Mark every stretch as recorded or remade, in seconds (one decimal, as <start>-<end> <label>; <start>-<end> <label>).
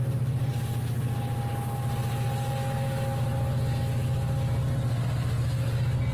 0.0-6.1 recorded